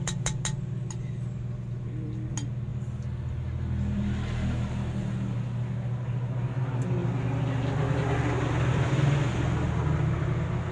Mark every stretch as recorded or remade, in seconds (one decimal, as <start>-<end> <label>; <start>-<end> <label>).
0.0-10.7 recorded